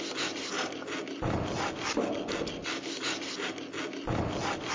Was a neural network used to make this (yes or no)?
no